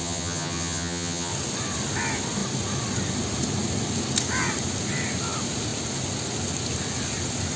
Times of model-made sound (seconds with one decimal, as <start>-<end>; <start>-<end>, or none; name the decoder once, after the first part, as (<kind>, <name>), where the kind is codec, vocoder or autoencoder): 0.0-1.3 (vocoder, HiFi-GAN)